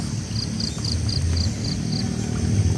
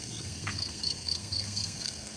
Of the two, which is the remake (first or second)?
second